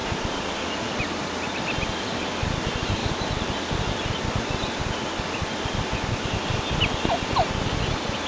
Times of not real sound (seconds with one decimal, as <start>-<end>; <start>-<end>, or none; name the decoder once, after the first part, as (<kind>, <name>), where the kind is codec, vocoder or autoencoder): 0.0-0.6 (vocoder, BigVGAN v2)